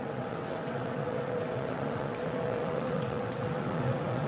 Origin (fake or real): fake